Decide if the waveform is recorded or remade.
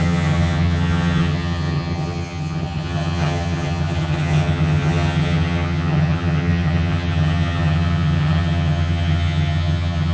remade